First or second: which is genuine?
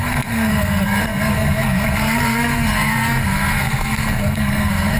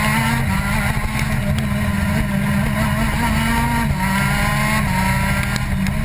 second